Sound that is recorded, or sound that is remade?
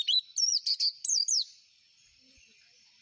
recorded